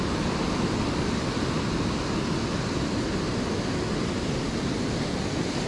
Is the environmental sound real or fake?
real